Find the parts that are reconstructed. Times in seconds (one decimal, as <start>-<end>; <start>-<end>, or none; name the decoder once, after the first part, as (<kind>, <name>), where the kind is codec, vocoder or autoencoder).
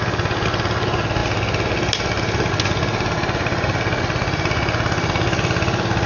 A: 2.9-3.7 (vocoder, BigVGAN v2)